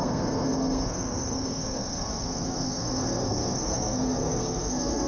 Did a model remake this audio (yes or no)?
yes